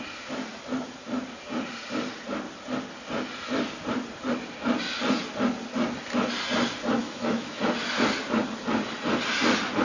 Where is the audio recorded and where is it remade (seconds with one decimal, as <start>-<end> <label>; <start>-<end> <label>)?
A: 0.0-7.0 recorded; 7.0-7.6 remade; 7.6-9.8 recorded